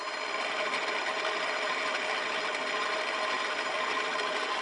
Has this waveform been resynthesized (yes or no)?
no